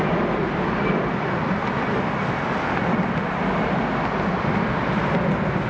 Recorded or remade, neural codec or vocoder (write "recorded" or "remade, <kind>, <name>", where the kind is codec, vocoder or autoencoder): recorded